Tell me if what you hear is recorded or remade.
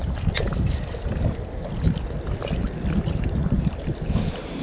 recorded